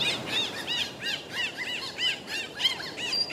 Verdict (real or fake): fake